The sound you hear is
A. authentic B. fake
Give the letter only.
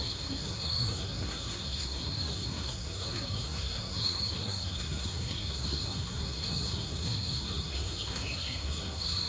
B